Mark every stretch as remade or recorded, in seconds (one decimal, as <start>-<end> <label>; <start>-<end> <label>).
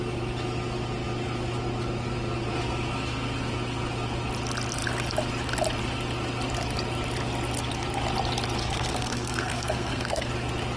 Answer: 0.0-8.6 recorded; 8.6-10.3 remade; 10.3-10.8 recorded